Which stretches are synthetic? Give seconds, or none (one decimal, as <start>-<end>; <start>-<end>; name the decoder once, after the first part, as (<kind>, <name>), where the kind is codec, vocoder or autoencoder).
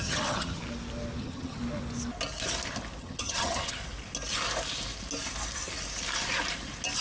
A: 0.0-0.6 (vocoder, HiFi-GAN); 1.2-1.6; 3.0-3.8